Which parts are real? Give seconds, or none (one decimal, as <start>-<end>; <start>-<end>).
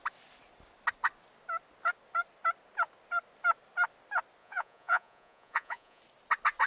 0.0-4.4; 6.0-6.7